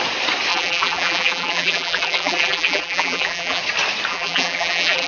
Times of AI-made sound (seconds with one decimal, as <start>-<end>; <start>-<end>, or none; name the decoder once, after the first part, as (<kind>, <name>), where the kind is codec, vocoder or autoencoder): 0.5-3.6 (vocoder, BigVGAN v2); 4.1-5.1